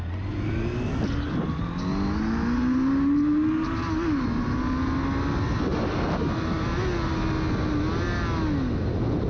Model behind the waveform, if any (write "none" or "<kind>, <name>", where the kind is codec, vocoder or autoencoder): none